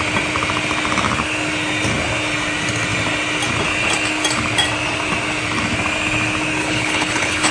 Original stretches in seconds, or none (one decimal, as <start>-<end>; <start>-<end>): 0.0-6.6